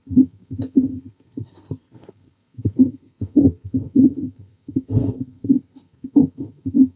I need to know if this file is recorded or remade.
remade